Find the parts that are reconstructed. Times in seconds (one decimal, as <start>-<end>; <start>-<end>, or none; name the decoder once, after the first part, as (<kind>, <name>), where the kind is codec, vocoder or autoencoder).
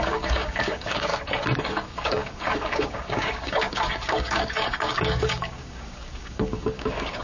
0.0-1.1 (codec, DAC); 1.6-7.2